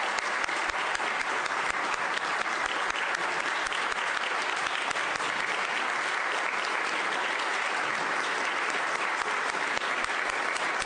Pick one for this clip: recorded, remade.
recorded